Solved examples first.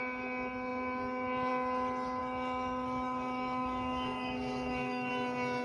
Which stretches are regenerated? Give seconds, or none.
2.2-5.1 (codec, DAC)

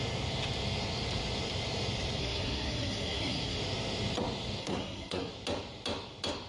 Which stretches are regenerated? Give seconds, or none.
2.2-3.6 (codec, SNAC); 4.6-5.3

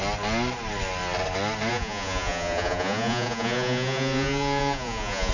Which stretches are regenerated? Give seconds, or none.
1.7-5.3 (vocoder, Vocos)

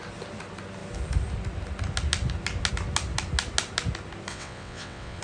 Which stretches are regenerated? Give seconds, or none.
4.3-5.2 (vocoder, WaveNeXt)

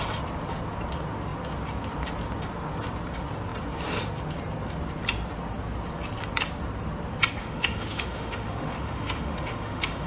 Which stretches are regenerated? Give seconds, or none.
7.4-10.1 (autoencoder, DAC-VAE)

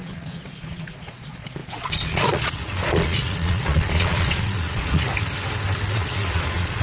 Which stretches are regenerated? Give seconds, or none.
0.0-5.1 (vocoder, Vocos); 5.9-6.8

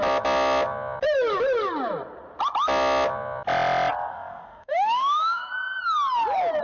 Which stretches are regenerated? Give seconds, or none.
4.1-5.5 (autoencoder, DAC-VAE)

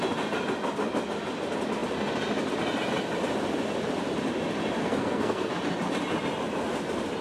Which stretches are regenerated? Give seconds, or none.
4.8-5.5 (codec, SNAC)